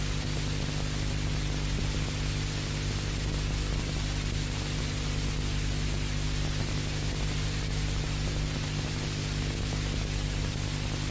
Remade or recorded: recorded